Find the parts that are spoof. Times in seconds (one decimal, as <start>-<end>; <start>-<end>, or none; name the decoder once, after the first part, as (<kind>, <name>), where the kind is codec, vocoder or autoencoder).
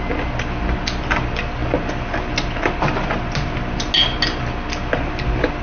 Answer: none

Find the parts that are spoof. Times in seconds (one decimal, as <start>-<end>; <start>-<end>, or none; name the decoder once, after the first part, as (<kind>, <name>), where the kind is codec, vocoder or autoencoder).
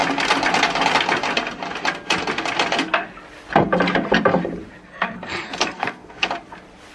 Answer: 4.8-6.3 (codec, SNAC)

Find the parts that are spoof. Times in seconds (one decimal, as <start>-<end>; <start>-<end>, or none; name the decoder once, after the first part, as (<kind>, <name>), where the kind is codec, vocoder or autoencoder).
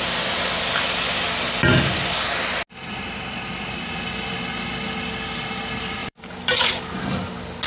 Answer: 6.0-6.8 (vocoder, BigVGAN v2)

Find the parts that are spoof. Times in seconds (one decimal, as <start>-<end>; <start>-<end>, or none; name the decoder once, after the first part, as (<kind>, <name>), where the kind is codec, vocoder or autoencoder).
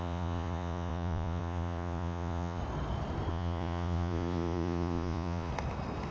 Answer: 0.0-2.6 (vocoder, Vocos); 3.3-5.5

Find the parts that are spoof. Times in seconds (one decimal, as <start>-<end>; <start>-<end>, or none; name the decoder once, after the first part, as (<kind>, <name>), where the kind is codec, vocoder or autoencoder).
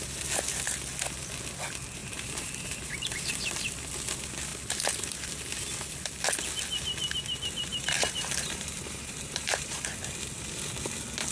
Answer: 2.0-3.3 (vocoder, BigVGAN v2); 7.7-9.8